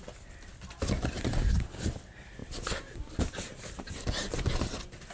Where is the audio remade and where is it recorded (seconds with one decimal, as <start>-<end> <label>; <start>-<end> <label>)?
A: 0.0-5.1 recorded